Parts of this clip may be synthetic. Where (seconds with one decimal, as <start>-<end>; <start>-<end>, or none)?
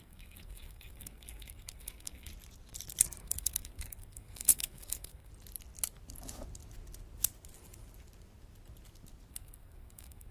0.0-2.3; 3.2-5.3; 9.3-10.3